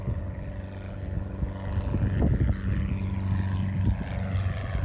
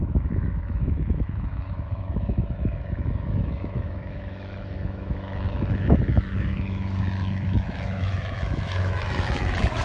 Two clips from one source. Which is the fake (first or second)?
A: second